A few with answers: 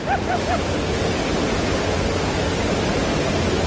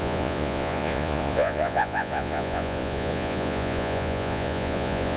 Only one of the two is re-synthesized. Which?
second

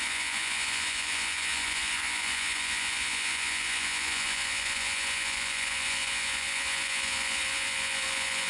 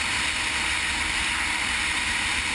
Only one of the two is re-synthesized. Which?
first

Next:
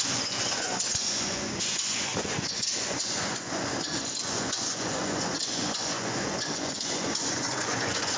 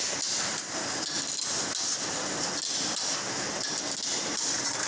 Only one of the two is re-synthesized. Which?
first